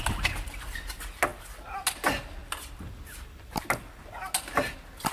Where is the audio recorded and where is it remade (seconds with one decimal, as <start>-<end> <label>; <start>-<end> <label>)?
0.0-5.1 recorded

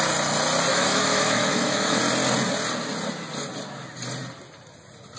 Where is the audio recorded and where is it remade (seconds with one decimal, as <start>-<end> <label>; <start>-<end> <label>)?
0.0-0.7 recorded; 0.7-2.0 remade; 2.0-5.2 recorded

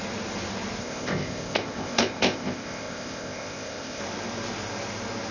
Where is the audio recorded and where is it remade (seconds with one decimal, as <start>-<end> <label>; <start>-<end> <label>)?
0.0-0.8 recorded; 0.8-4.0 remade; 4.0-5.3 recorded

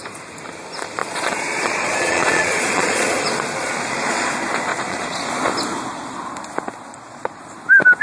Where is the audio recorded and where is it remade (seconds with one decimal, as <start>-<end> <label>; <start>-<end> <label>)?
0.0-1.0 recorded; 1.0-4.3 remade; 4.3-4.7 recorded; 4.7-5.3 remade; 5.3-6.9 recorded; 6.9-7.4 remade; 7.4-8.0 recorded

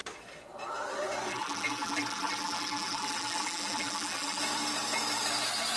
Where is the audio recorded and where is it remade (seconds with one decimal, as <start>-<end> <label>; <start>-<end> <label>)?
0.0-1.3 recorded; 1.3-4.4 remade; 4.4-5.8 recorded

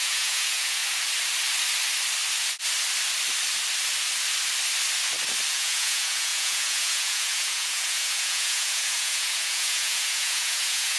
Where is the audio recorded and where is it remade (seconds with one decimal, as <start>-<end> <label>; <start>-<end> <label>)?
0.0-0.8 remade; 0.8-5.5 recorded; 5.5-11.0 remade

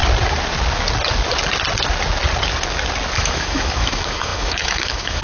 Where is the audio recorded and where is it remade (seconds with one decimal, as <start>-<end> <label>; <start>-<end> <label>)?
0.0-3.1 recorded; 3.1-5.2 remade

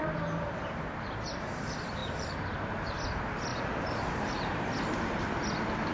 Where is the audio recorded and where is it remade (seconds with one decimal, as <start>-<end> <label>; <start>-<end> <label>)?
0.0-2.0 recorded; 2.0-2.8 remade; 2.8-3.5 recorded; 3.5-5.2 remade; 5.2-5.9 recorded